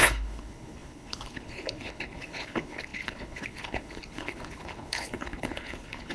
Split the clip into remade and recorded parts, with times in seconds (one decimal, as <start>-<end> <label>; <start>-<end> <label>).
0.0-6.1 remade

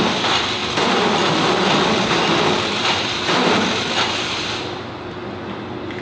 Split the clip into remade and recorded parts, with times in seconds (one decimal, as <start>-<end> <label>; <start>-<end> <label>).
0.0-6.0 recorded

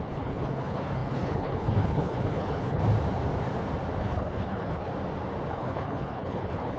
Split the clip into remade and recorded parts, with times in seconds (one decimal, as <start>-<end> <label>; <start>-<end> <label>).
0.0-2.8 remade; 2.8-4.0 recorded; 4.0-4.9 remade; 4.9-5.5 recorded; 5.5-6.8 remade

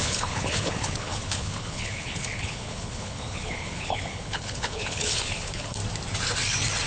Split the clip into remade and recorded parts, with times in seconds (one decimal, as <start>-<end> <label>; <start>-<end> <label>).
0.0-5.8 remade; 5.8-6.9 recorded

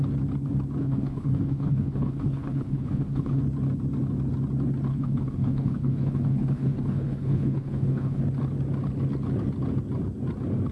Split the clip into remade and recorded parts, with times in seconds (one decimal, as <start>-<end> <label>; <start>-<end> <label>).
0.0-0.8 recorded; 0.8-3.4 remade; 3.4-4.9 recorded; 4.9-8.2 remade; 8.2-10.7 recorded

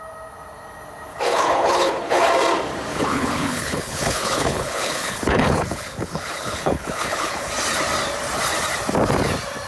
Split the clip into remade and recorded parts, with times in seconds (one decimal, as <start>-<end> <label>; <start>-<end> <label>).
0.0-1.1 recorded; 1.1-2.3 remade; 2.3-2.9 recorded; 2.9-7.5 remade; 7.5-9.7 recorded

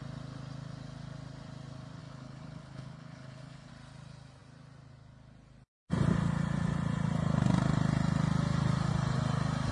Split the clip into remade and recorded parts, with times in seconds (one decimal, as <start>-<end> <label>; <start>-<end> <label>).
0.0-2.0 recorded; 2.0-3.7 remade; 3.7-9.7 recorded

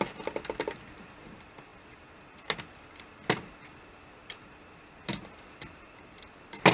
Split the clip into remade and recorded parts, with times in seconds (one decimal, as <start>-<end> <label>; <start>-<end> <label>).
0.0-6.7 recorded